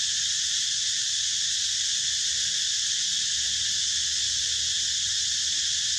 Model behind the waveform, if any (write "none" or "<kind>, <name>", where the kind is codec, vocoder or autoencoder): none